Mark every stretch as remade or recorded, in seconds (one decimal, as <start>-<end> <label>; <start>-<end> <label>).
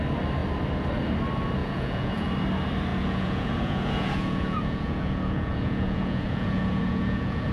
0.0-1.6 recorded; 1.6-2.3 remade; 2.3-2.9 recorded; 2.9-7.5 remade